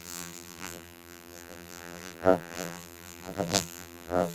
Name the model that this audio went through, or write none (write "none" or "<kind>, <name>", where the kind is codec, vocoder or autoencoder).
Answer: vocoder, BigVGAN v2